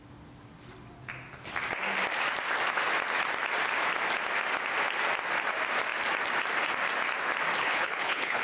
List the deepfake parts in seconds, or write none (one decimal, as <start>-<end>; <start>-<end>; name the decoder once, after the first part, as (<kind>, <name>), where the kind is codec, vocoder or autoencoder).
7.6-8.4 (codec, HILCodec)